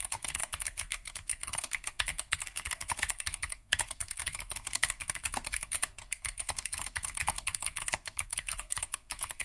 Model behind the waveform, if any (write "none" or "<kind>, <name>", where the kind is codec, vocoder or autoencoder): codec, SNAC